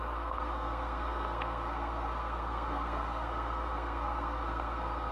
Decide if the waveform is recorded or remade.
remade